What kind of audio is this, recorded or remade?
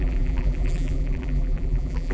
remade